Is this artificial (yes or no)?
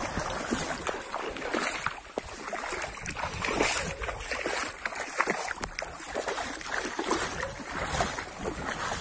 no